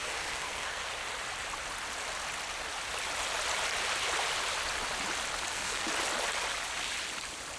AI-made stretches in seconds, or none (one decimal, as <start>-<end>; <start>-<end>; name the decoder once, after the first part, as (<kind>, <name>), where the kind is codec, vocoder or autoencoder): 0.0-0.9 (codec, SNAC); 5.5-5.9